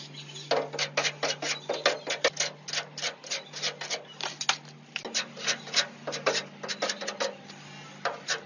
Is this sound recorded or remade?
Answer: recorded